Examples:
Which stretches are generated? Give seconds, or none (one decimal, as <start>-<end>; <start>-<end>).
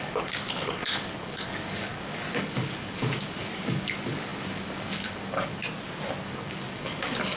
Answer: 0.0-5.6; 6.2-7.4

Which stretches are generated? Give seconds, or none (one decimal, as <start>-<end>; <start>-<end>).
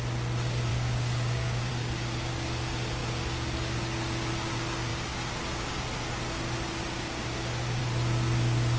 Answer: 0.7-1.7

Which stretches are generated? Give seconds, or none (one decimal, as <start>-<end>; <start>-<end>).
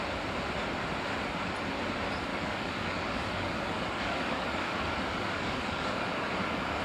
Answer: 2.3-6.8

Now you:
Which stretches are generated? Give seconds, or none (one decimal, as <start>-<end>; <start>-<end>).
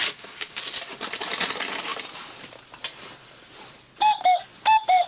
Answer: 0.0-0.6